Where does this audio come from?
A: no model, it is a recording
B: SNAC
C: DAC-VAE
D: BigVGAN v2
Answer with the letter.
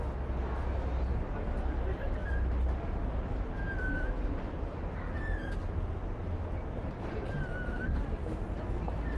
A